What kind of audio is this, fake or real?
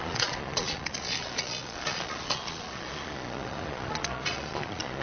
fake